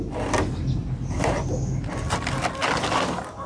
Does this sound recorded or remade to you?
recorded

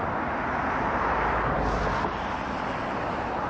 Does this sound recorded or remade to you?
recorded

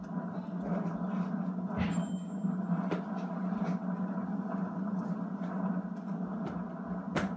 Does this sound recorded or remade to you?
recorded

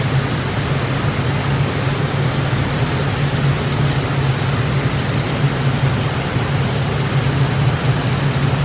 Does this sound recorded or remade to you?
recorded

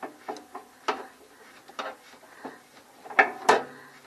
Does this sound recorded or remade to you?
recorded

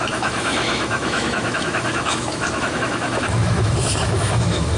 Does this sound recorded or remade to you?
remade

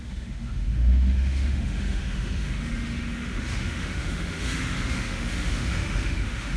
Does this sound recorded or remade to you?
remade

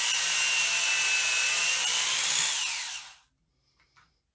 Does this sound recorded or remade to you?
recorded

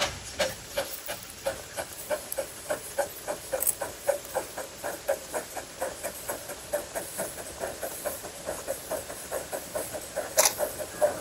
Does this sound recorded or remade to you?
recorded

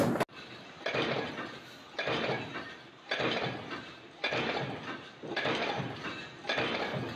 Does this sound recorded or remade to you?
recorded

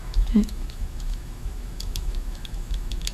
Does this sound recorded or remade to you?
remade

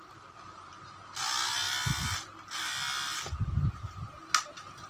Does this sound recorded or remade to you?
recorded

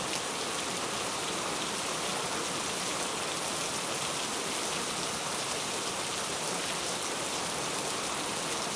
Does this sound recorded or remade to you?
recorded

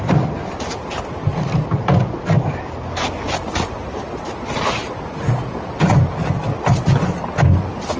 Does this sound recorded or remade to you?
recorded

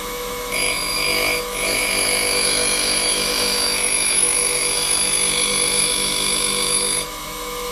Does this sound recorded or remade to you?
remade